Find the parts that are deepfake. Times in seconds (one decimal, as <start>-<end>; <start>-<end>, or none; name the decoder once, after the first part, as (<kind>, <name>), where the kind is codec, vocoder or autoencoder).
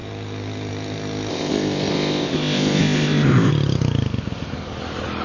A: 1.3-3.5 (codec, ZipCodec)